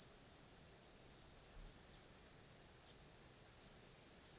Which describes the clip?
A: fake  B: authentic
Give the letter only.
B